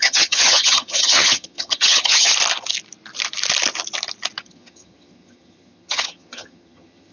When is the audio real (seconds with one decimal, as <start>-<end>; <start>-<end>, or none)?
2.3-4.4